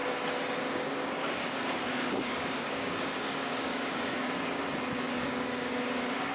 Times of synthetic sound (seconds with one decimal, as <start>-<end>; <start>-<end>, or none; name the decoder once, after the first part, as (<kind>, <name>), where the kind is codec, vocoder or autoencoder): 0.6-4.6 (codec, DAC); 5.1-6.3